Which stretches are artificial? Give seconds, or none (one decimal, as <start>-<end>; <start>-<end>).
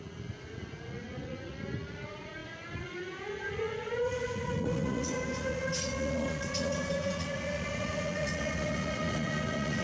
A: 0.0-9.8